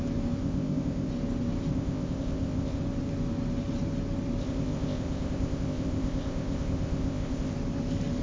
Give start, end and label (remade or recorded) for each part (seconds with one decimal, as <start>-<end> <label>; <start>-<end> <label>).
0.0-0.4 recorded; 0.4-1.1 remade; 1.1-1.7 recorded; 1.7-2.8 remade; 2.8-4.4 recorded; 4.4-7.5 remade; 7.5-8.2 recorded